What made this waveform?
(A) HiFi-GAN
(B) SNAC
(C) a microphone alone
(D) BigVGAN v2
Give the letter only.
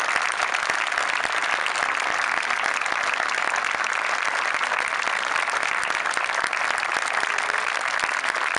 C